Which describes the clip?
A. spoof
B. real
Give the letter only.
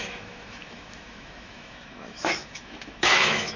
A